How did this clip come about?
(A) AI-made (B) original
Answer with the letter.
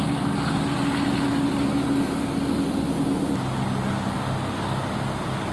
B